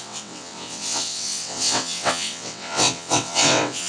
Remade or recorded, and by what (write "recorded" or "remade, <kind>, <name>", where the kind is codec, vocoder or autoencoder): remade, vocoder, WaveNeXt